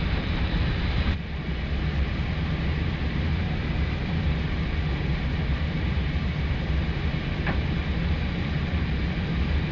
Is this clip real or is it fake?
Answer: fake